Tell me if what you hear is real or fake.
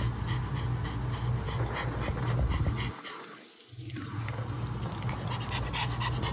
real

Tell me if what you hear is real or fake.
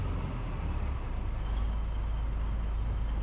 real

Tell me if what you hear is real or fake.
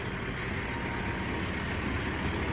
real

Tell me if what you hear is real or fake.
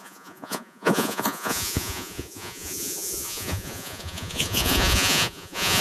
fake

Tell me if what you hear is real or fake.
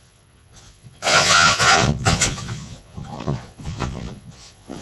fake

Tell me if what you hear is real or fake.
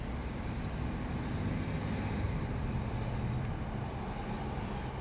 real